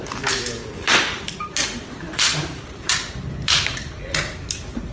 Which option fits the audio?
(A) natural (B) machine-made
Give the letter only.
B